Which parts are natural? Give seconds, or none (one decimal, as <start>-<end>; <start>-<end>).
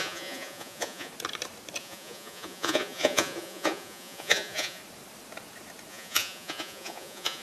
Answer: 1.1-1.8; 4.8-5.9